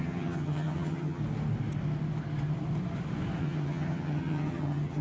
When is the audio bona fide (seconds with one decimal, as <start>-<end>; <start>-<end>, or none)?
1.2-3.4